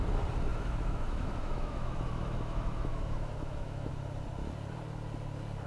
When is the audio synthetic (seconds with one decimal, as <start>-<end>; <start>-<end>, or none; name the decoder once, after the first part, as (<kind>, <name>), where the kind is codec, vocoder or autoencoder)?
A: 0.5-3.9 (autoencoder, DAC-VAE)